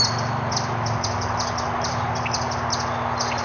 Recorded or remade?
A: recorded